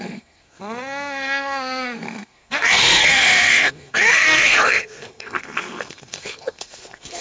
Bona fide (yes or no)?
no